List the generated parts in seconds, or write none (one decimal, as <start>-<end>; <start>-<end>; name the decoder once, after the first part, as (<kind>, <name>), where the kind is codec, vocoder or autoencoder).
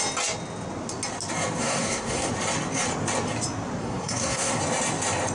1.6-2.3 (codec, SNAC); 3.8-4.6